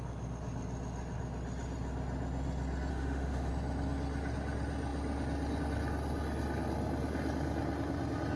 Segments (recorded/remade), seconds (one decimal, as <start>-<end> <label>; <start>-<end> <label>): 0.0-2.9 recorded; 2.9-3.5 remade; 3.5-8.4 recorded